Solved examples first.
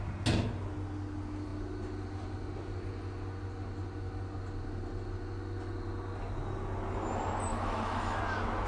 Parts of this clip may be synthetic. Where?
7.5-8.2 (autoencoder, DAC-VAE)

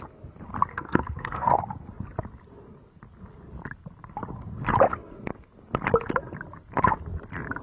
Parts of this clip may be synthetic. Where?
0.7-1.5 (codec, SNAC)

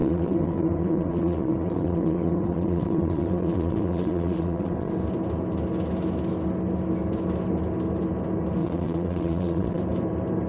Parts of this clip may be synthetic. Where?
0.0-4.9 (vocoder, WaveNeXt); 8.6-9.8